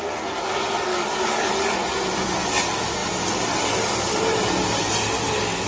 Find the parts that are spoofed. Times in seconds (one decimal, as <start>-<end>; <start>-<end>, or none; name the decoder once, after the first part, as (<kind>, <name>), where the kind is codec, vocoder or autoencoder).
0.9-1.5 (codec, DAC)